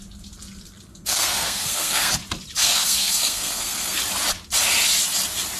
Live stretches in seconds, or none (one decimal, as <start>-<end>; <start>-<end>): 0.0-0.9; 2.1-2.6; 4.0-5.6